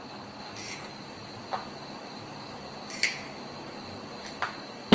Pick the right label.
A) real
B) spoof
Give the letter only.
A